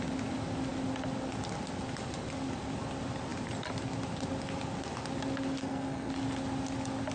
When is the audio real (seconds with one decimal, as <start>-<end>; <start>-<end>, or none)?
0.0-5.6; 6.1-7.1